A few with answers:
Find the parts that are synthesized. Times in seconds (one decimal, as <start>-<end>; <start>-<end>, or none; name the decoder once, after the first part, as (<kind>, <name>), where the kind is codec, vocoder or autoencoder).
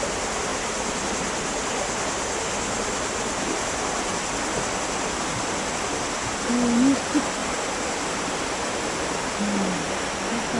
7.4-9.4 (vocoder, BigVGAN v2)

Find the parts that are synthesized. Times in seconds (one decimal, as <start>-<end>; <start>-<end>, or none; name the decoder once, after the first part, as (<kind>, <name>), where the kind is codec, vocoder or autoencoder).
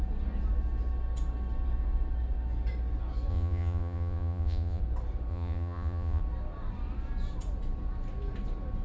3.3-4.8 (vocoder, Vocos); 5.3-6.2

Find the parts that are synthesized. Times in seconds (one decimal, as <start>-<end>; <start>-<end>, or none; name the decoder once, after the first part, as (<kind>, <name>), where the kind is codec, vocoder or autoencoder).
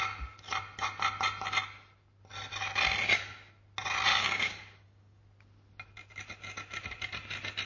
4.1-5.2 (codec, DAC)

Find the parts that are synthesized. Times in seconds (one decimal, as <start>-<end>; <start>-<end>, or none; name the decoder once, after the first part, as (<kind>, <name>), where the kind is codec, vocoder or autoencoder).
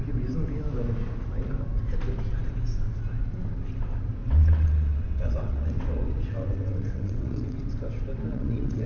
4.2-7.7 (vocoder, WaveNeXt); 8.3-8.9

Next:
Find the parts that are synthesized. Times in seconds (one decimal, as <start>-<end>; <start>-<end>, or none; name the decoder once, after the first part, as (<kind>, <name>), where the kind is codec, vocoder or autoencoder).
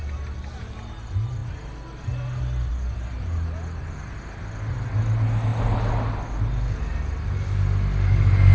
none